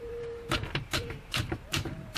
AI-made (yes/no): yes